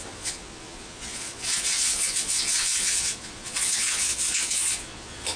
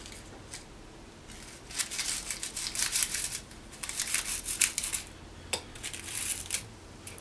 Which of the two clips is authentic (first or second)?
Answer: second